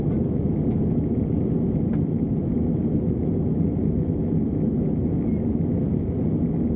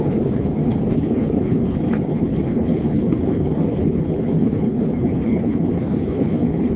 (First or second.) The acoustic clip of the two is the first